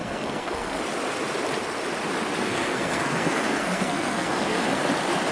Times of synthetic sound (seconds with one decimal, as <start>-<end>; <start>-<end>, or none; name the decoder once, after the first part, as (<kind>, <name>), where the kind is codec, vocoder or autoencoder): 0.0-0.8 (codec, SNAC); 2.4-4.8